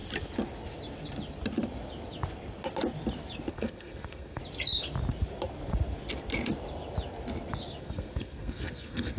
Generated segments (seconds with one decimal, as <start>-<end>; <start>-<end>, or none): 3.5-4.4; 7.8-9.2